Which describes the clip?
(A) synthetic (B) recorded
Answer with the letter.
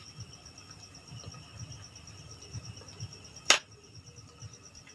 B